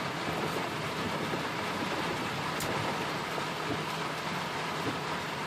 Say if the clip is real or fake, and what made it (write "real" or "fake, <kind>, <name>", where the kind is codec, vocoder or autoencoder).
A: real